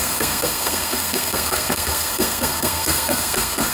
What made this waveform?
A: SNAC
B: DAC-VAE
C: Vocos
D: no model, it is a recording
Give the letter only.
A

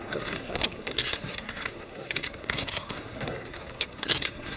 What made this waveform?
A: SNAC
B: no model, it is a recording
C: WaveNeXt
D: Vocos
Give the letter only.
A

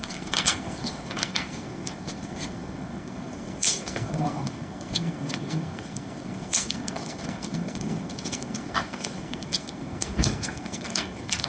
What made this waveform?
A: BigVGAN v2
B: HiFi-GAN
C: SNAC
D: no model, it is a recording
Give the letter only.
C